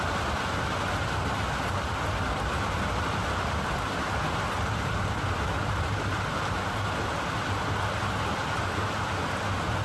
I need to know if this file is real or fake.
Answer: real